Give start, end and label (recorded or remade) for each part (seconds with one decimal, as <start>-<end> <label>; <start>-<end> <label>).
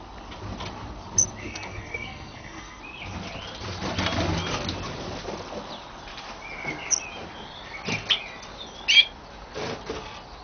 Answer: 0.0-1.4 recorded; 1.4-2.8 remade; 2.8-10.4 recorded